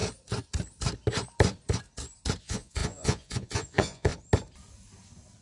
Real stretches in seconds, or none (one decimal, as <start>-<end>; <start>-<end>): 0.0-2.4; 4.1-5.4